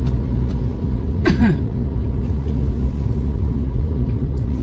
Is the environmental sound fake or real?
fake